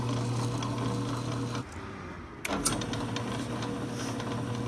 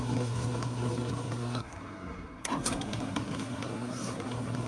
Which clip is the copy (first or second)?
second